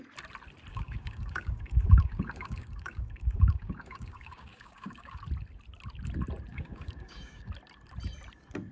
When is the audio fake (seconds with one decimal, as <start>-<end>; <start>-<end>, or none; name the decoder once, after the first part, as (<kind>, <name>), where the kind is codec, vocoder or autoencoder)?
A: 0.7-5.2 (codec, DAC); 6.5-7.5